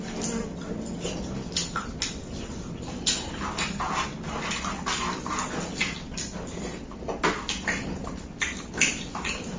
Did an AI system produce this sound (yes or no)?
no